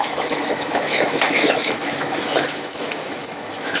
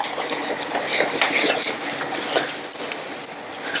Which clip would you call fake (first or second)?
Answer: first